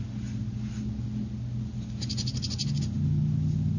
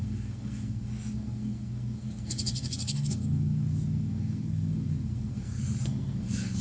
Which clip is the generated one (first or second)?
second